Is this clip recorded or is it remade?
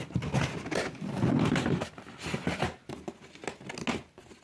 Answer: recorded